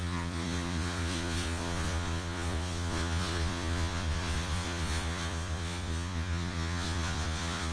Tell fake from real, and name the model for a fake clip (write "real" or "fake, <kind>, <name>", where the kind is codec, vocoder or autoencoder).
fake, vocoder, Vocos